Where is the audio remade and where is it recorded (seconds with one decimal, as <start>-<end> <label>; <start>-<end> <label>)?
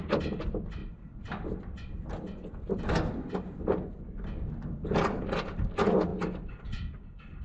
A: 0.0-7.4 recorded